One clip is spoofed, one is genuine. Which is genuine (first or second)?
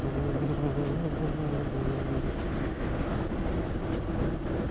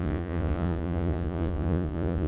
first